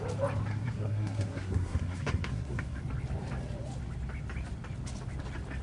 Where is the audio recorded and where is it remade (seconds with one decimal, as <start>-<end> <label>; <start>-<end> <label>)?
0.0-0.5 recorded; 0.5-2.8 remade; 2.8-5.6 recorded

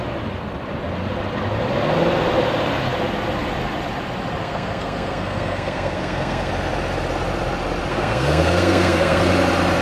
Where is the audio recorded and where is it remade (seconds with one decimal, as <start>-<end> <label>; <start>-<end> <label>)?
0.0-4.4 recorded; 4.4-6.5 remade; 6.5-7.9 recorded; 7.9-9.2 remade; 9.2-9.8 recorded

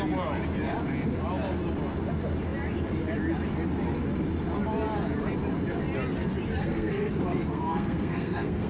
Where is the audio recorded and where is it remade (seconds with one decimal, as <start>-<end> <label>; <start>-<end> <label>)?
0.0-6.5 recorded; 6.5-7.1 remade; 7.1-7.5 recorded; 7.5-8.7 remade

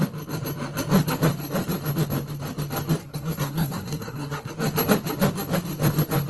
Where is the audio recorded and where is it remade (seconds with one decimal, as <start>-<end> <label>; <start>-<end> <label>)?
0.0-3.0 recorded; 3.0-4.5 remade; 4.5-6.3 recorded

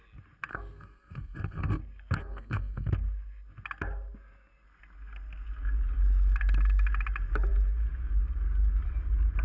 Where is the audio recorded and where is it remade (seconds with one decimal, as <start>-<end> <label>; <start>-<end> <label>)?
0.0-0.5 recorded; 0.5-1.8 remade; 1.8-2.2 recorded; 2.2-2.9 remade; 2.9-9.4 recorded

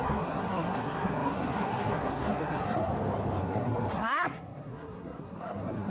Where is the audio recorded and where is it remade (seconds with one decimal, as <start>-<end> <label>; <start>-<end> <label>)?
0.0-2.9 remade; 2.9-3.4 recorded; 3.4-5.9 remade